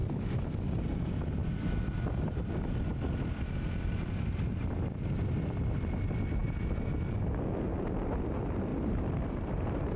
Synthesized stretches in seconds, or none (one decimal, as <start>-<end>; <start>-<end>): 8.7-10.0